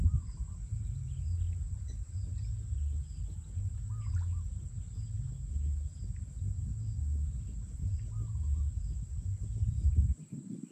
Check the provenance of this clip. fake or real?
real